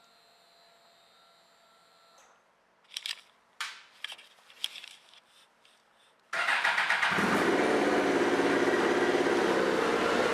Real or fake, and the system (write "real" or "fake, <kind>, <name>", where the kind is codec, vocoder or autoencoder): fake, vocoder, BigVGAN v2